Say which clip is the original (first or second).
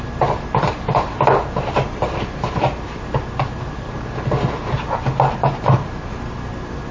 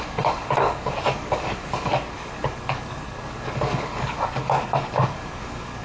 first